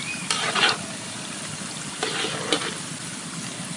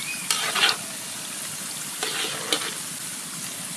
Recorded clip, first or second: second